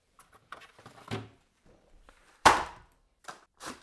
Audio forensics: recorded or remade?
remade